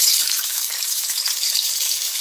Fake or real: fake